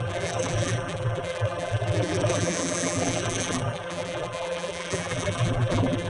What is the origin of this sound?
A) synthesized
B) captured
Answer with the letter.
A